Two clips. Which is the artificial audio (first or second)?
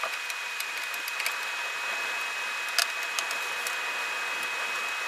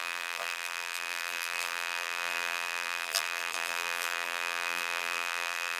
second